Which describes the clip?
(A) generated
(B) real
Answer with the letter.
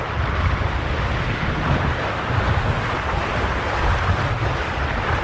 B